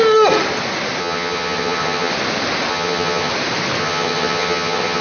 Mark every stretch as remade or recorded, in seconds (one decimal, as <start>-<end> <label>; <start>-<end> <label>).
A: 0.0-1.0 recorded; 1.0-2.1 remade; 2.1-2.7 recorded; 2.7-3.3 remade; 3.3-3.8 recorded; 3.8-5.0 remade